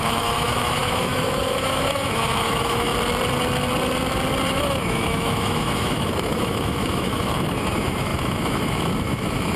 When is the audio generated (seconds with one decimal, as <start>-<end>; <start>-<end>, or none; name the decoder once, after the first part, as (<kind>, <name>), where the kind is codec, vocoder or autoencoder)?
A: 0.0-2.9 (autoencoder, DAC-VAE); 4.5-9.6